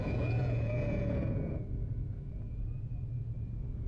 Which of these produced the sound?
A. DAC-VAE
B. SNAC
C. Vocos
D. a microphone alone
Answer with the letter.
C